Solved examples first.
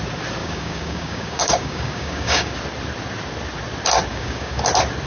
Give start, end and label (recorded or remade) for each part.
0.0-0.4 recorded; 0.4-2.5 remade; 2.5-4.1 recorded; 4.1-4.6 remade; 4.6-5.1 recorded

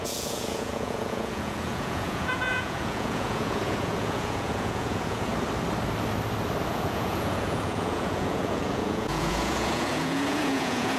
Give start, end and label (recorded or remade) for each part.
0.0-5.3 remade; 5.3-6.7 recorded; 6.7-11.0 remade

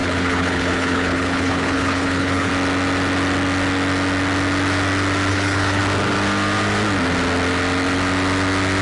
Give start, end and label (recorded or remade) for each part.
0.0-2.5 remade; 2.5-5.3 recorded; 5.3-5.8 remade; 5.8-8.8 recorded

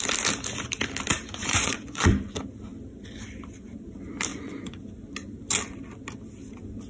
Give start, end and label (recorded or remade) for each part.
0.0-1.4 recorded; 1.4-2.1 remade; 2.1-4.3 recorded; 4.3-4.8 remade; 4.8-6.9 recorded

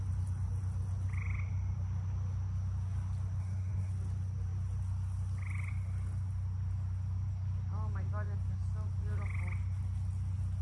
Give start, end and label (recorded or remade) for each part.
0.0-3.4 recorded; 3.4-3.9 remade; 3.9-10.6 recorded